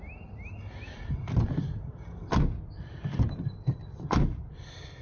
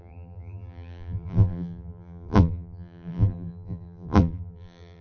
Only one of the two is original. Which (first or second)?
first